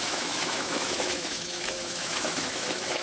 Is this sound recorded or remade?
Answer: remade